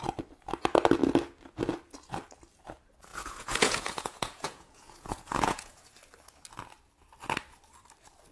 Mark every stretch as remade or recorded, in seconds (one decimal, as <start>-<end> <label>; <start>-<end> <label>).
0.0-3.1 recorded; 3.1-5.9 remade; 5.9-8.3 recorded